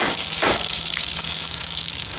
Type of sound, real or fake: fake